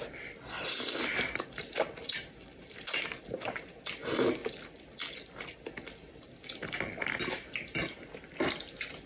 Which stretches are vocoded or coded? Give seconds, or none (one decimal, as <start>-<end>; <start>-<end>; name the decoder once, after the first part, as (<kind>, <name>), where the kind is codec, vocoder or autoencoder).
1.6-3.7 (vocoder, BigVGAN v2)